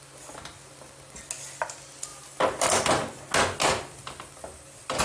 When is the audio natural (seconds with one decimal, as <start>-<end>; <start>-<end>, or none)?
0.0-5.0